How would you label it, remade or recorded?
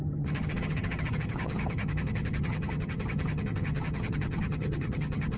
remade